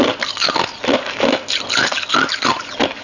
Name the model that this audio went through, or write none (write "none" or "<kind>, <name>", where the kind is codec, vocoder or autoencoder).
none